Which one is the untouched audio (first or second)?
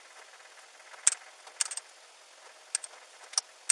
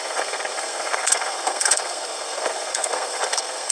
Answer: first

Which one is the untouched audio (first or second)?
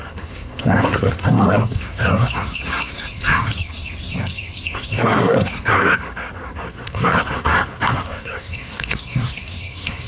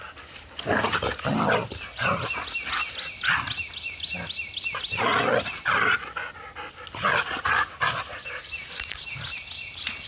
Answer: second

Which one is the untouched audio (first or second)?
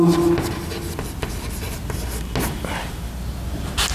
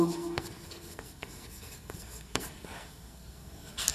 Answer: first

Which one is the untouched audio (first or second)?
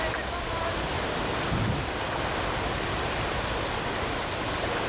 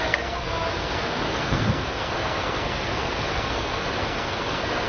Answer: first